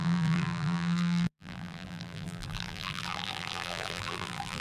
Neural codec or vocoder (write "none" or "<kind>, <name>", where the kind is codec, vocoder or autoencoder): vocoder, BigVGAN v2